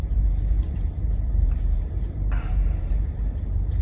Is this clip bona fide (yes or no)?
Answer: no